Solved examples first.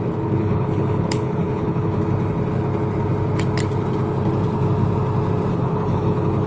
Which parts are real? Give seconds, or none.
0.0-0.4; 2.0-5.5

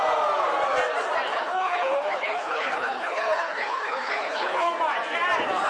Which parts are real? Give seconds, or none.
0.0-1.3; 4.7-5.7

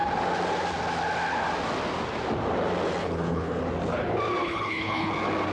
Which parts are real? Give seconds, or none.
0.0-3.0; 3.6-4.4; 5.1-5.5

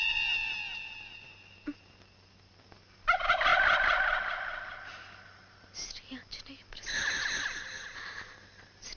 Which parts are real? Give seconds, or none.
0.0-9.0

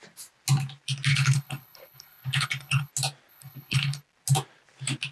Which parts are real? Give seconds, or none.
0.0-1.1; 2.9-3.3; 4.0-5.1